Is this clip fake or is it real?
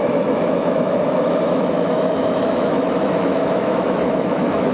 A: fake